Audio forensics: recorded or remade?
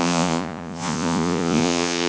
remade